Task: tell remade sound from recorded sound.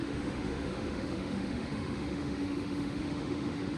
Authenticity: remade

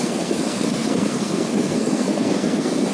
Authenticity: remade